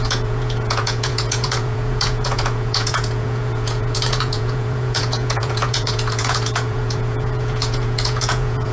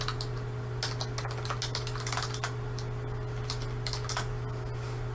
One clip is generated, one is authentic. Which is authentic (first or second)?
second